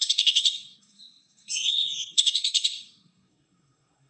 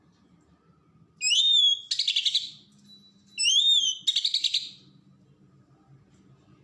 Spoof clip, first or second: first